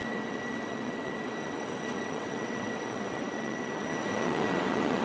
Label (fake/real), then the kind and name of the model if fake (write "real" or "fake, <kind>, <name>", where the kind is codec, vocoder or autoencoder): fake, vocoder, WaveNeXt